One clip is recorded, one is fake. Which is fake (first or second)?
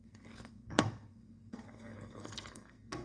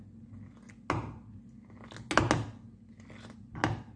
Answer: first